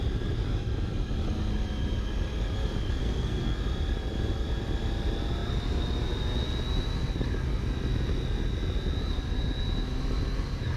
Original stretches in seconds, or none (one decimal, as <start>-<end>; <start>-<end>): 0.0-3.0; 3.6-10.8